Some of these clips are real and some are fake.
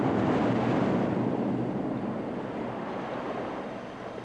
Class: real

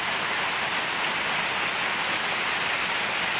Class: real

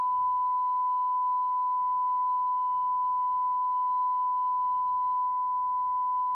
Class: fake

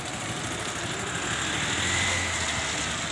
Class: real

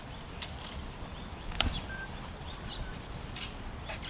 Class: real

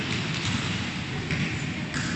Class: real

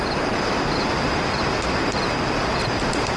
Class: real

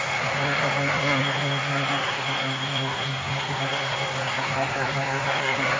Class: fake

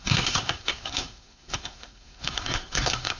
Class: fake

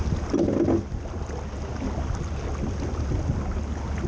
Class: real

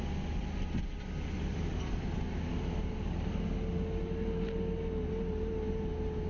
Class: real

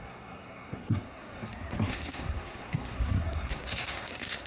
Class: fake